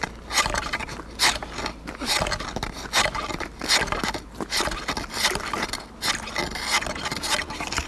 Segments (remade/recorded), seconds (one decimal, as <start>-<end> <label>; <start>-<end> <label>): 0.0-7.9 recorded